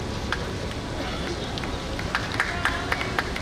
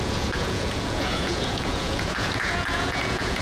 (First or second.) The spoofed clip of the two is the second